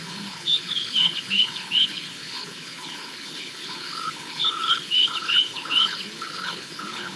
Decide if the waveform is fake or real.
fake